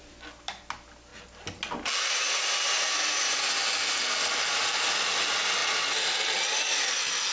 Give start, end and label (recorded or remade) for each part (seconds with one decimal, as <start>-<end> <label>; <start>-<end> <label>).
0.0-7.3 recorded